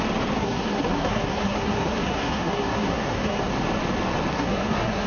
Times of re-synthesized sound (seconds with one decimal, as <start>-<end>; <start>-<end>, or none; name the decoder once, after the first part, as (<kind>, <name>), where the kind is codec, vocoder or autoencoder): 0.4-3.5 (codec, SNAC); 4.3-5.1